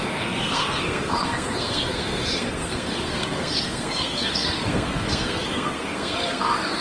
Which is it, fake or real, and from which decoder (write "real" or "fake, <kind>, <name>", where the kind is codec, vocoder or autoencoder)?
fake, codec, SNAC